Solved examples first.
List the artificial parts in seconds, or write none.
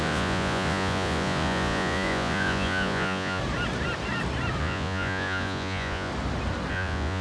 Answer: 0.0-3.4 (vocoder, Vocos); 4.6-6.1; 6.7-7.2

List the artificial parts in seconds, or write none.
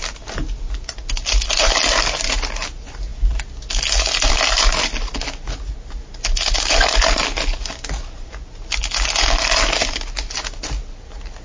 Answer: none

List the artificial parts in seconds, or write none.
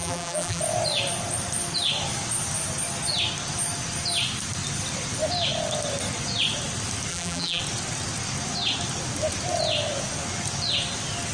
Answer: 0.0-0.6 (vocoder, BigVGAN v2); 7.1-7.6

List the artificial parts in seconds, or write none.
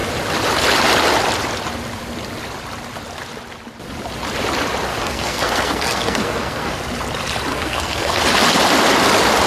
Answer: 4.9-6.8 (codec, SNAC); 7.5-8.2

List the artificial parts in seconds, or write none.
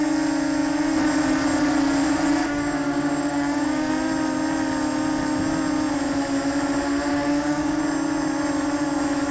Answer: 2.4-3.9 (codec, DAC); 7.1-7.8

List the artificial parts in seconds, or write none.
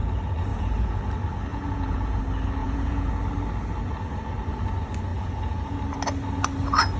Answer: 0.5-1.0 (vocoder, Vocos); 1.5-2.2; 2.6-3.1; 5.1-5.8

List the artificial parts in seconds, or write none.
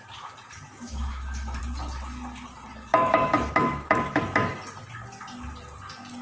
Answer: 0.7-1.6 (autoencoder, DAC-VAE); 2.9-4.2